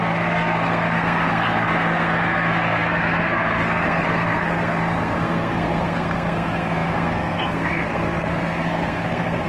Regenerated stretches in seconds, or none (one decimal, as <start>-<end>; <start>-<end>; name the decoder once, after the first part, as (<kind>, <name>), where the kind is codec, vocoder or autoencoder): 0.0-9.5 (codec, SNAC)

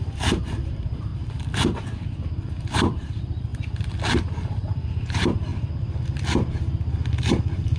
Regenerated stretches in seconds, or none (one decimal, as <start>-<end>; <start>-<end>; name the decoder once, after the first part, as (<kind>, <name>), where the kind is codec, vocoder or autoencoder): 0.0-1.1 (vocoder, BigVGAN v2); 2.7-3.5; 4.2-5.5